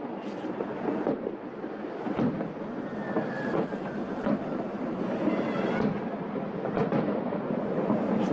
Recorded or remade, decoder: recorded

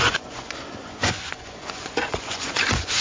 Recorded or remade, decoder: remade, vocoder, Vocos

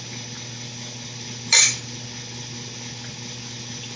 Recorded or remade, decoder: recorded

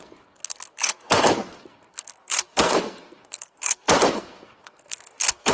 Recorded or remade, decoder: remade, codec, SNAC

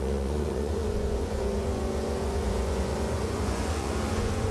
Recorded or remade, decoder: remade, vocoder, Vocos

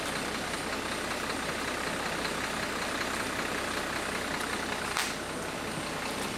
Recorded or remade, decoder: recorded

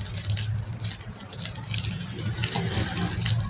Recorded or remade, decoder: recorded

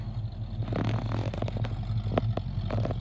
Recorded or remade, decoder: recorded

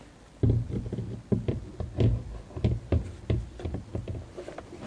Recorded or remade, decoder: recorded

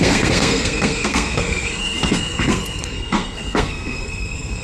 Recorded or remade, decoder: remade, codec, SNAC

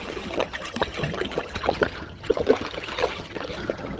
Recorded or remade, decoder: remade, vocoder, HiFi-GAN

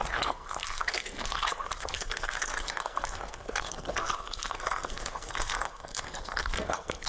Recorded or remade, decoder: remade, codec, SNAC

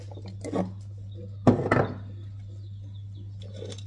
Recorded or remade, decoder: recorded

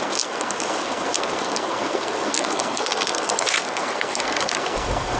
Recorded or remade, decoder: remade, codec, SNAC